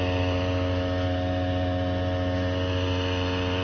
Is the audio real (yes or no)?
yes